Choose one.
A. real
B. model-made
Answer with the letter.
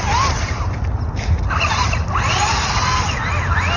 A